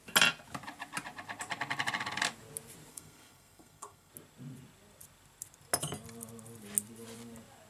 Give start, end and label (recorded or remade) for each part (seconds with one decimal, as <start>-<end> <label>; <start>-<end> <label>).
0.0-2.9 recorded; 2.9-4.1 remade; 4.1-7.7 recorded